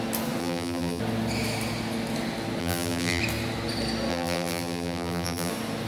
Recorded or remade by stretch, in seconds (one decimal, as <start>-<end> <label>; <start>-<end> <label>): 0.0-0.4 recorded; 0.4-1.0 remade; 1.0-2.6 recorded; 2.6-3.2 remade; 3.2-4.1 recorded; 4.1-5.5 remade; 5.5-5.9 recorded